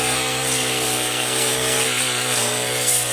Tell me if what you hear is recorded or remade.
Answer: remade